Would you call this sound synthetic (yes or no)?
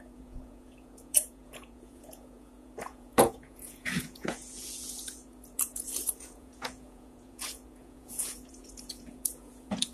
yes